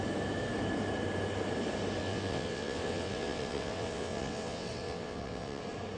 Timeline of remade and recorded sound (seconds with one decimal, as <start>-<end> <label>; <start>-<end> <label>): 0.0-2.0 recorded; 2.0-5.6 remade; 5.6-6.0 recorded